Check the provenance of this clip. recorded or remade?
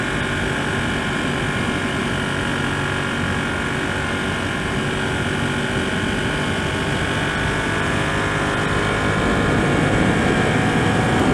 recorded